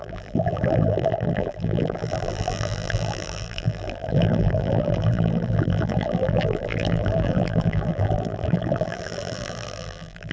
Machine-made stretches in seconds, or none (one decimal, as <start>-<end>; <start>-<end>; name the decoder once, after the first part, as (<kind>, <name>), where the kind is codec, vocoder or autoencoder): 0.0-10.3 (vocoder, BigVGAN v2)